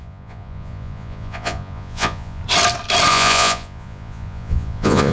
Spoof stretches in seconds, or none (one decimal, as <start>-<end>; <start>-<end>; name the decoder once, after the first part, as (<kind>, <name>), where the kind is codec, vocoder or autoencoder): 0.0-2.4 (vocoder, Vocos); 3.1-5.1